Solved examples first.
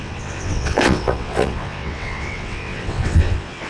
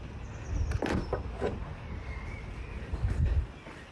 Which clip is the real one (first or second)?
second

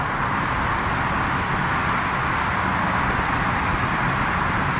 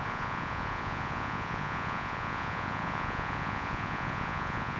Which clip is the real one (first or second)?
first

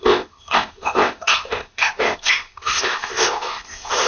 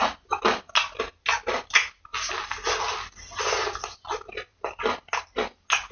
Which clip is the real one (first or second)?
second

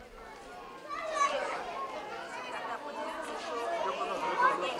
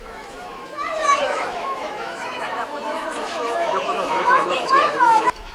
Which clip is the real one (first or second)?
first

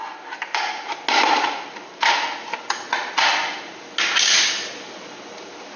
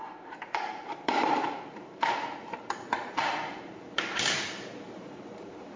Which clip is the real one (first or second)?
first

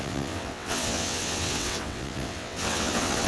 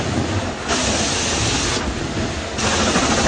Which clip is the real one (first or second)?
second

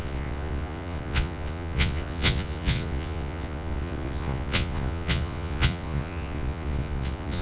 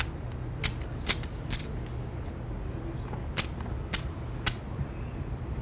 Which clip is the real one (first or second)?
second